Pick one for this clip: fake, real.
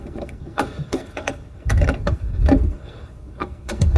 fake